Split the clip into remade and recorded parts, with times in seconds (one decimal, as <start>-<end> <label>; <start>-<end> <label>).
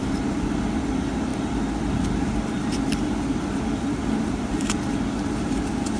0.0-6.0 recorded